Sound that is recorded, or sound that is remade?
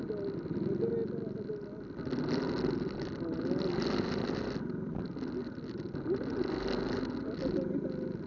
recorded